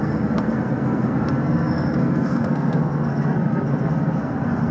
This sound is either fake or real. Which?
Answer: fake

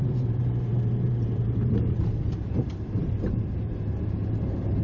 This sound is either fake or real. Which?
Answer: fake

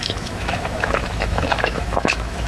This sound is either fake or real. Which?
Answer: fake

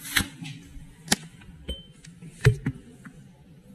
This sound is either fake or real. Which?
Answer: real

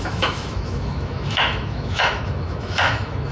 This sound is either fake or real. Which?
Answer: fake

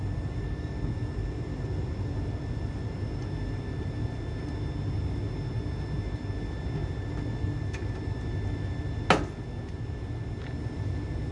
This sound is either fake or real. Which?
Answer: real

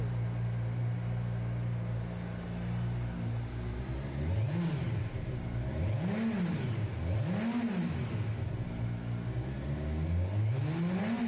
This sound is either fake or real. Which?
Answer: real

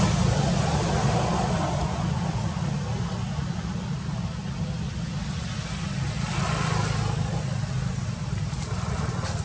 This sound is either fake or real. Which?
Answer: real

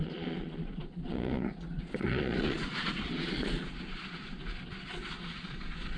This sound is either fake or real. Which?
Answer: fake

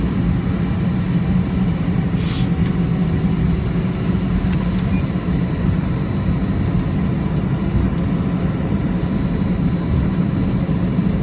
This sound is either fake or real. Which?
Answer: real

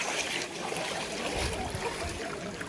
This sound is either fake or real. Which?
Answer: real